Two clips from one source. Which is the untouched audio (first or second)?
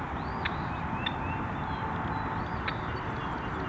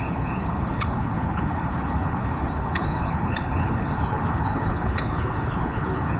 first